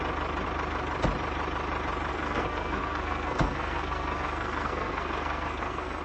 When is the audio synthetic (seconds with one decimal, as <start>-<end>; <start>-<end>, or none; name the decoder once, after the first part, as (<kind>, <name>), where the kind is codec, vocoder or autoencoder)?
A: 2.1-6.0 (codec, SNAC)